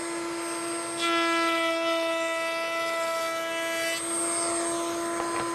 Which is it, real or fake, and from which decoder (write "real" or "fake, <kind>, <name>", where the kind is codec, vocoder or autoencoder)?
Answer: real